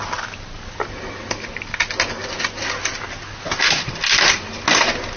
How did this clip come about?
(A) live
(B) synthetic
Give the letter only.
A